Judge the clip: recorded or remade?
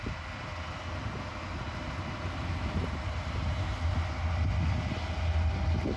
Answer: recorded